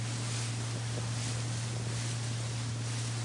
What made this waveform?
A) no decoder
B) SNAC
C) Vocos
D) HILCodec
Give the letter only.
A